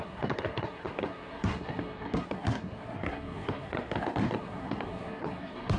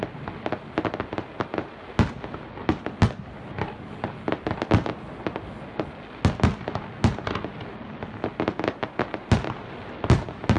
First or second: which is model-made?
first